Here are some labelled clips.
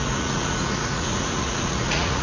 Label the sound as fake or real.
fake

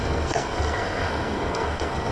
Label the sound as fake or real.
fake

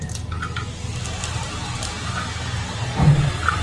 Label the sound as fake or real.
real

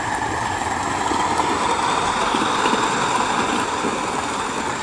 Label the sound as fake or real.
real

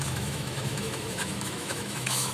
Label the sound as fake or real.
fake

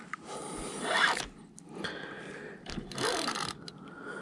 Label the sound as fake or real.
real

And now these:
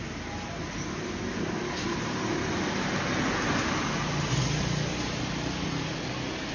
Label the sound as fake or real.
real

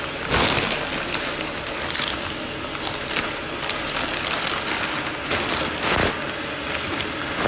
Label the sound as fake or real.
real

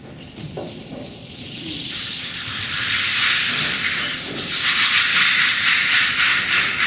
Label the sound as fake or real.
real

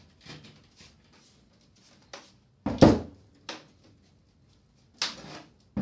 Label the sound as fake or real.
real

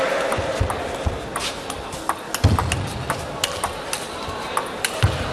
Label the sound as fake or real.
real